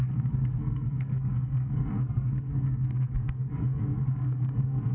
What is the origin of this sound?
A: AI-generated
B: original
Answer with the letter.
A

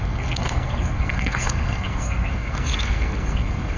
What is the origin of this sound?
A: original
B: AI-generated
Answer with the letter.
B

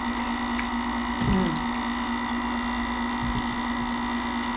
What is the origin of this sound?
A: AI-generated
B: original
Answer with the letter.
B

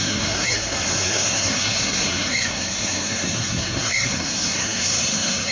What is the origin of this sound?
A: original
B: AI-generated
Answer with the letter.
B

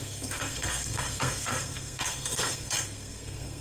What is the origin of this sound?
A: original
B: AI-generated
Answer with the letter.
B